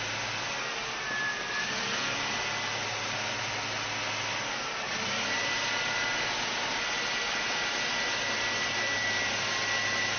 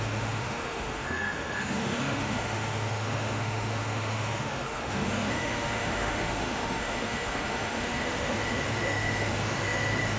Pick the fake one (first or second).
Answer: second